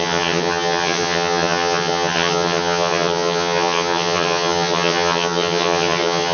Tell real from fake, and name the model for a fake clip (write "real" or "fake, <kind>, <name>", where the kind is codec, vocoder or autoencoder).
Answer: fake, vocoder, HiFi-GAN